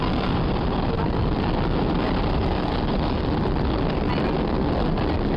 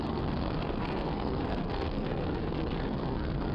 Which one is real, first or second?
first